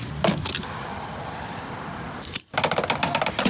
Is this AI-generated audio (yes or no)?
no